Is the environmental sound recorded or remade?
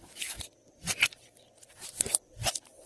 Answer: remade